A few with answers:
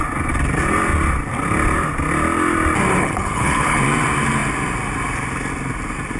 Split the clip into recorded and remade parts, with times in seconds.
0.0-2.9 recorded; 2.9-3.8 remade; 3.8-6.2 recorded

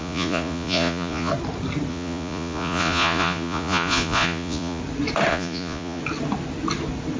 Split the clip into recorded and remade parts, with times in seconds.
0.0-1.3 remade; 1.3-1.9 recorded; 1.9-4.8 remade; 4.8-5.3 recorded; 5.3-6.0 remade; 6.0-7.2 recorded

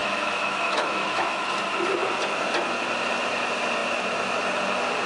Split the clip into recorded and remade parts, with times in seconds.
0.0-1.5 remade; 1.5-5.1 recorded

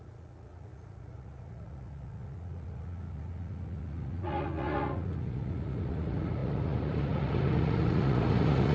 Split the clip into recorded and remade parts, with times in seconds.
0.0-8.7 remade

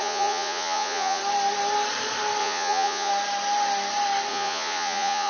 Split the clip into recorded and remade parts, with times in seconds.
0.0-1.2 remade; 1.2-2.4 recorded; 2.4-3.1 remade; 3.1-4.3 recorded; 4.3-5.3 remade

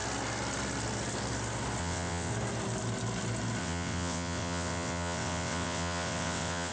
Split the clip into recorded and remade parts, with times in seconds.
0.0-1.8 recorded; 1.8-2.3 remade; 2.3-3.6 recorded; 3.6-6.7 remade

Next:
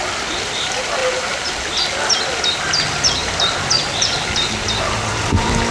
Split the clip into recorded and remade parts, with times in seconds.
0.0-1.0 remade; 1.0-2.6 recorded; 2.6-5.7 remade

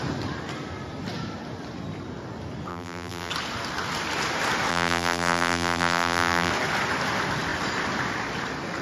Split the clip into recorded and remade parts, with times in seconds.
0.0-2.7 recorded; 2.7-3.3 remade; 3.3-4.7 recorded; 4.7-6.5 remade; 6.5-8.8 recorded